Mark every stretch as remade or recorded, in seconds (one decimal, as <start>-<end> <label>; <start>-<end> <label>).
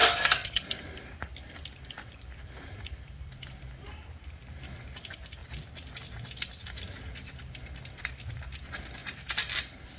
0.0-5.4 remade; 5.4-7.0 recorded; 7.0-10.0 remade